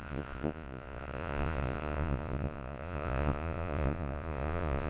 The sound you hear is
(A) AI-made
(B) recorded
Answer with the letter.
A